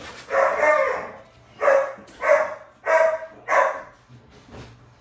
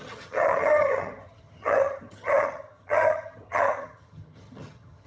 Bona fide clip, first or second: first